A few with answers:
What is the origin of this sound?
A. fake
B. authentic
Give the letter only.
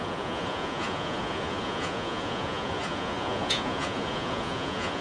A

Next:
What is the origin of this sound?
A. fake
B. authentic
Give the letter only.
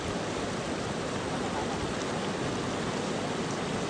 B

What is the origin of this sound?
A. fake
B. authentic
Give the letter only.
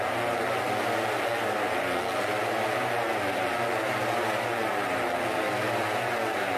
B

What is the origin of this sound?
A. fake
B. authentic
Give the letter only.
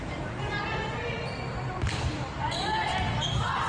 B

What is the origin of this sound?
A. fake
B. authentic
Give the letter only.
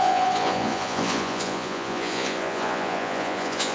A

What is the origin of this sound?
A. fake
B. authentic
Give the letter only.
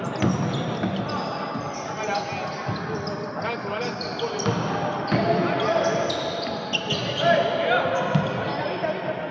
B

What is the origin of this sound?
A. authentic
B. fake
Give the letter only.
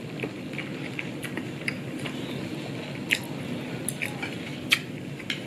A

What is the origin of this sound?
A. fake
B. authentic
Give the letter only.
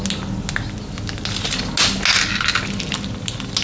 B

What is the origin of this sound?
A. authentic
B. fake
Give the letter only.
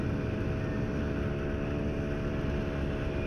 A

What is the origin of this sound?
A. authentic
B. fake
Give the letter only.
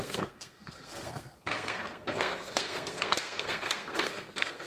B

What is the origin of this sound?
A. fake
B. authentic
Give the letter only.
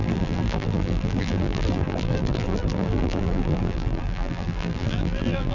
A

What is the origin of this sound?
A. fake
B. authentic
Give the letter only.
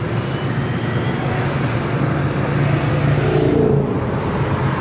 B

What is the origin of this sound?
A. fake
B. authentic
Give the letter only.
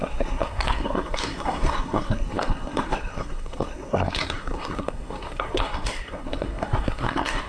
A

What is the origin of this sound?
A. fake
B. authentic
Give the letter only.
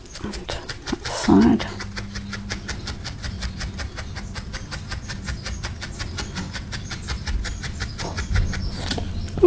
B